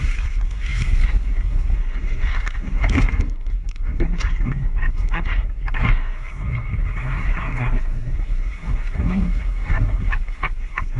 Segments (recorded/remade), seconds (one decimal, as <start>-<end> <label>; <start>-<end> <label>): 0.0-11.0 remade